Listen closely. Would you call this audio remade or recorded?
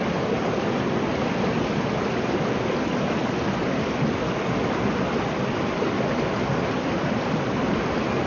recorded